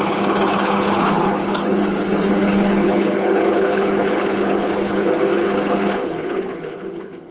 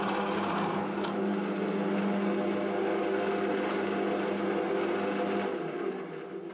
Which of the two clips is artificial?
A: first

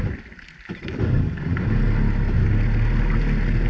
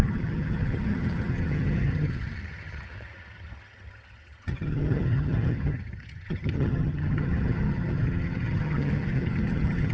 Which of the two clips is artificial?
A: second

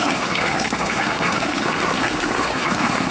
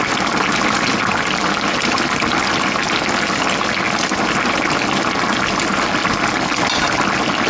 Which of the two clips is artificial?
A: first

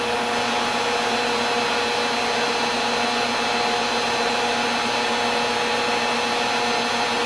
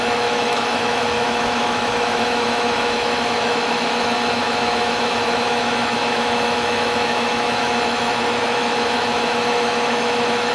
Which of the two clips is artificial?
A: second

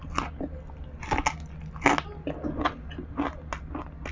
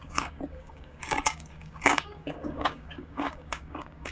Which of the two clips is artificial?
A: second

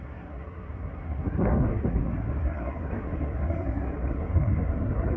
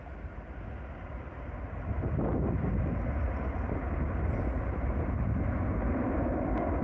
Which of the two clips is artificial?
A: first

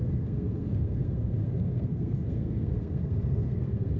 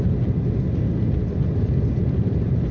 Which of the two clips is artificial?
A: first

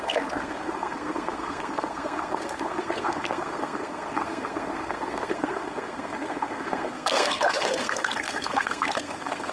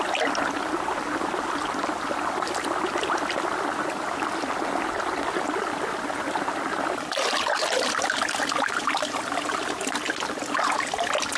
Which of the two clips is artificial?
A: first